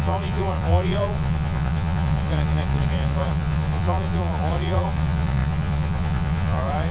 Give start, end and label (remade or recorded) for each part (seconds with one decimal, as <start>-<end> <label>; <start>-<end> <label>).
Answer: 0.0-6.9 remade